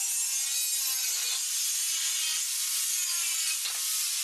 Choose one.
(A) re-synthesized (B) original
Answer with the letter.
B